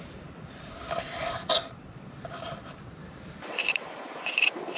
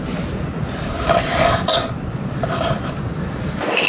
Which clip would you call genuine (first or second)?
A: second